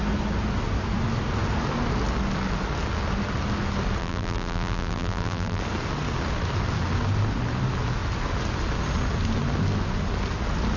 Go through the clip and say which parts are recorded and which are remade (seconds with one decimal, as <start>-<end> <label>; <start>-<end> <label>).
0.0-4.0 recorded; 4.0-5.6 remade; 5.6-10.8 recorded